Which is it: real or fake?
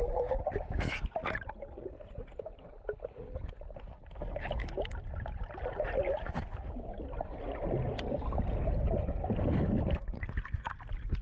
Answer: real